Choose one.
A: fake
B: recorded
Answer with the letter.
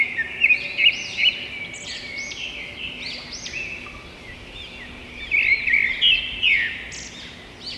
B